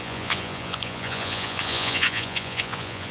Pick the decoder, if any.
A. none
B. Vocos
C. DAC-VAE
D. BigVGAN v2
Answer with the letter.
B